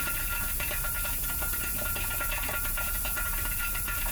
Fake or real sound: fake